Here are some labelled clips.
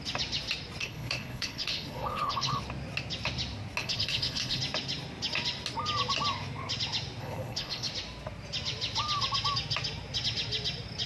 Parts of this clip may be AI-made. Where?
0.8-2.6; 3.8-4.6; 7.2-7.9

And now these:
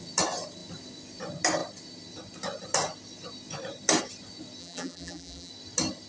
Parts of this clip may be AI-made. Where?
4.6-5.5

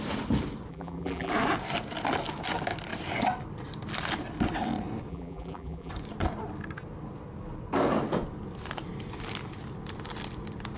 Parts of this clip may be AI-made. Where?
0.7-1.3; 5.1-5.9

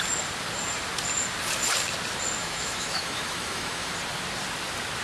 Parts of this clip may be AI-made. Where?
2.4-3.9